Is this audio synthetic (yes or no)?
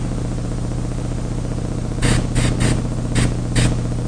no